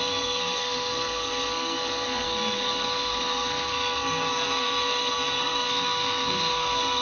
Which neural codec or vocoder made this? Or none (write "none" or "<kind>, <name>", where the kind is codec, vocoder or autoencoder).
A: codec, SNAC